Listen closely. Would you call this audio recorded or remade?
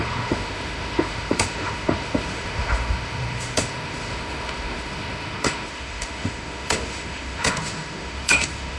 remade